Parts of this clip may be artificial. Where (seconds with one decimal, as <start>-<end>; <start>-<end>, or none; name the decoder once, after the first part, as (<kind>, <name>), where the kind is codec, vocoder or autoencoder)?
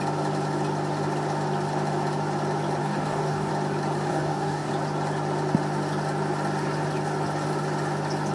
2.8-3.5 (codec, DAC); 4.1-4.7